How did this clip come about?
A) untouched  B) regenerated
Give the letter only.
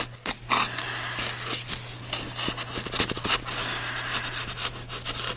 A